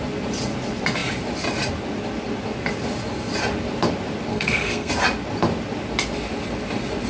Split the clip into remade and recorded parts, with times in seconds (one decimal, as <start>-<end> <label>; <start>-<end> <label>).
0.0-4.3 recorded; 4.3-4.9 remade; 4.9-7.1 recorded